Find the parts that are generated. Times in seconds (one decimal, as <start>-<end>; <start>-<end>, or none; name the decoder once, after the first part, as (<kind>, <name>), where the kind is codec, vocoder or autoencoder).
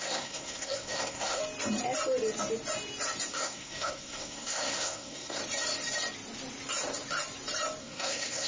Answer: 0.0-1.4 (codec, SNAC); 3.3-5.4; 7.8-8.5